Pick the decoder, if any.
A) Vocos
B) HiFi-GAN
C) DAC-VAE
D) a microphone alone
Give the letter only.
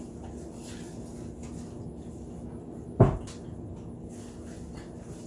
D